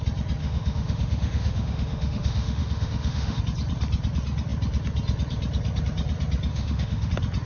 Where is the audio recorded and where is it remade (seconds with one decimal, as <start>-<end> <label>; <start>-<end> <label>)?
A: 0.0-0.4 recorded; 0.4-3.4 remade; 3.4-6.5 recorded; 6.5-7.1 remade; 7.1-7.5 recorded